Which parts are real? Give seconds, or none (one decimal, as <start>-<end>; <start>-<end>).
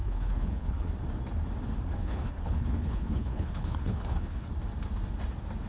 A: 0.9-2.0; 4.5-5.7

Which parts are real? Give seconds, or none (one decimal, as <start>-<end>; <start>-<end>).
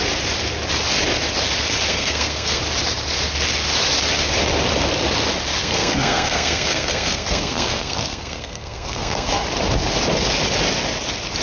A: 0.0-1.9; 2.6-5.6; 9.3-11.4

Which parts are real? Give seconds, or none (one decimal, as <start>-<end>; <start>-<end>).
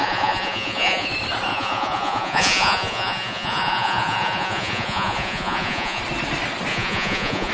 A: 1.1-1.5; 6.0-6.7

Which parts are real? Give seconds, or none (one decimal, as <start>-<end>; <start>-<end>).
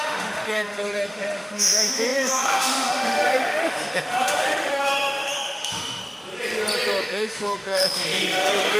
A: 6.0-7.0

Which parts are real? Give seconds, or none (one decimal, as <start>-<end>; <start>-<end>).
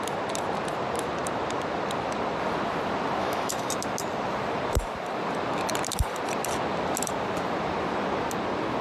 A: 0.0-3.2; 3.7-8.8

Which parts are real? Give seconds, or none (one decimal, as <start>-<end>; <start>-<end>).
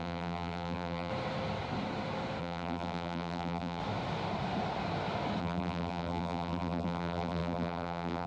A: 1.1-2.4; 3.8-5.4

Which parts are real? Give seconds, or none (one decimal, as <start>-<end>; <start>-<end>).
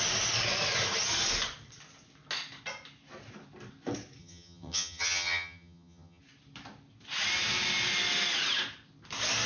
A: 0.0-4.2; 6.2-9.5